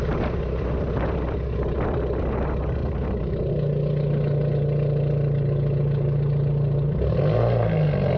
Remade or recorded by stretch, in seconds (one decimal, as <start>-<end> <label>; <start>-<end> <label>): 0.0-2.8 recorded; 2.8-3.5 remade; 3.5-8.2 recorded